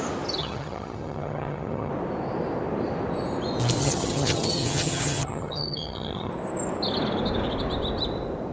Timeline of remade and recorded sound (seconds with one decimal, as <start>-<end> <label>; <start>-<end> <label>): 0.0-0.4 recorded; 0.4-1.9 remade; 1.9-3.8 recorded; 3.8-6.3 remade; 6.3-8.5 recorded